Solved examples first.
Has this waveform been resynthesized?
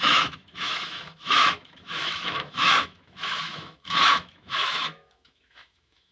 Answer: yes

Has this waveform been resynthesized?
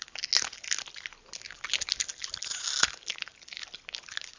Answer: no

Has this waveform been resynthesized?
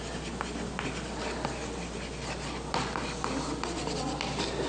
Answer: no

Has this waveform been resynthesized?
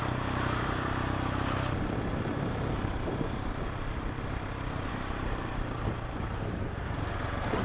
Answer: yes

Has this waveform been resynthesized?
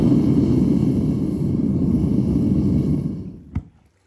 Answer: no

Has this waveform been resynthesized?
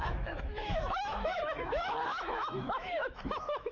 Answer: yes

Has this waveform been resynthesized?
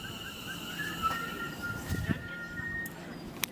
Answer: no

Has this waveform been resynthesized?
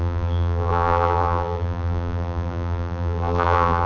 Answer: yes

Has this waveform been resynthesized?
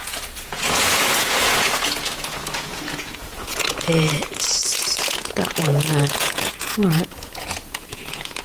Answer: yes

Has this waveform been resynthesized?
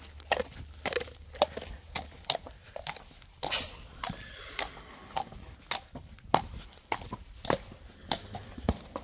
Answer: no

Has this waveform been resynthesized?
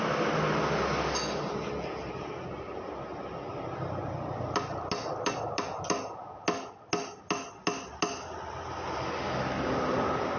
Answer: no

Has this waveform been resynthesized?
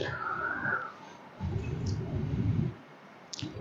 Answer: yes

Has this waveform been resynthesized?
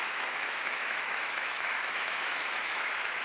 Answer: yes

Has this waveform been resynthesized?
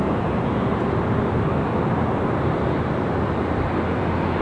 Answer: no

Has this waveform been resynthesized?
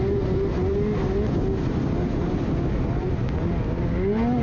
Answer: no